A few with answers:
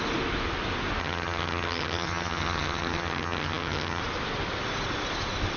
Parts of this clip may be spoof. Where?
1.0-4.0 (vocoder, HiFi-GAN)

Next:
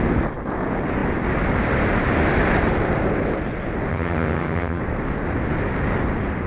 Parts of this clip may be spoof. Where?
3.9-4.8 (vocoder, HiFi-GAN)